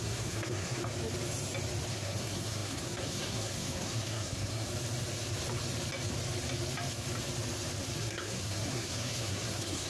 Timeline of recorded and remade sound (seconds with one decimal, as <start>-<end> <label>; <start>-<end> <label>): 0.0-0.8 remade; 0.8-1.9 recorded; 1.9-4.7 remade; 4.7-8.0 recorded; 8.0-9.9 remade